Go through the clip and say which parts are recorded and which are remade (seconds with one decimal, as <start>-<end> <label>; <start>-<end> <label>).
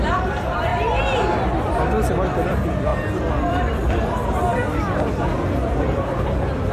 0.0-0.7 remade; 0.7-2.5 recorded; 2.5-2.9 remade; 2.9-3.4 recorded; 3.4-6.7 remade